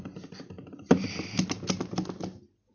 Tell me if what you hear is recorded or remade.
recorded